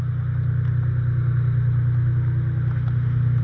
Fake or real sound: real